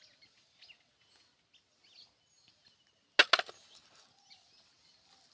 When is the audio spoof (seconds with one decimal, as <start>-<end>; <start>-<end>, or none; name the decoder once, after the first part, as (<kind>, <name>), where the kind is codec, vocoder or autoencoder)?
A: none